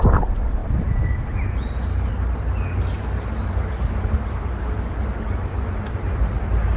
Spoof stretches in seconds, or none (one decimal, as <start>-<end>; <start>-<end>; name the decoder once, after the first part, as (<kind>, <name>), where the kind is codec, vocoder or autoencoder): none